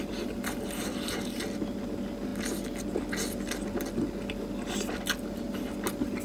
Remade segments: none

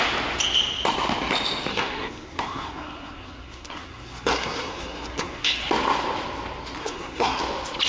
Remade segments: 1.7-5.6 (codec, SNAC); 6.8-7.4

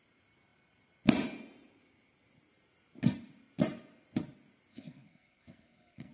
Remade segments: 4.7-6.1 (codec, SNAC)

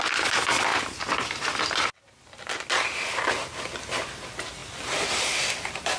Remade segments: none